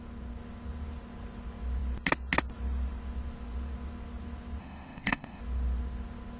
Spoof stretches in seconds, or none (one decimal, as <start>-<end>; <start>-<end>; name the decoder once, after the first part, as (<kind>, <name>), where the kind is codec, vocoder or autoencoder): 4.6-5.4 (autoencoder, DAC-VAE)